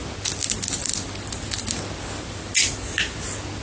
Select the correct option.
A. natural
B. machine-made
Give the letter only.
A